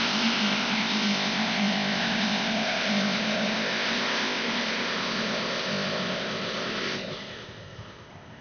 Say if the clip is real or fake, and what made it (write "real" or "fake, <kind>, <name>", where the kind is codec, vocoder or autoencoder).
fake, codec, ZipCodec